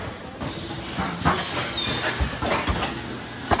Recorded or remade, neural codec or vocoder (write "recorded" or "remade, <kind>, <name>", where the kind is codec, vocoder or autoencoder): recorded